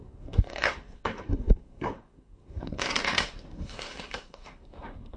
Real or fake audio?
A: fake